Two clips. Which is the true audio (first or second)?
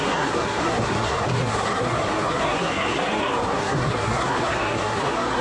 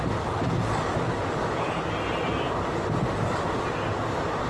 second